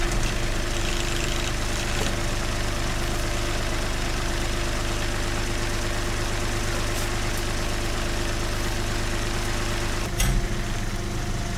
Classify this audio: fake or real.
real